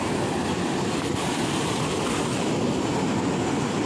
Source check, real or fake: real